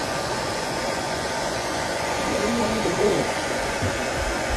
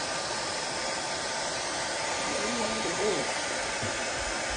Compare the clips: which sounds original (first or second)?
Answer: second